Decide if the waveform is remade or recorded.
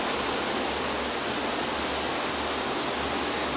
recorded